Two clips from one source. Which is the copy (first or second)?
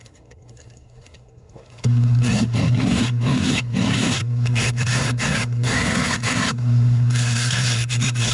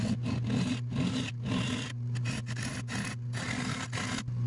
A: first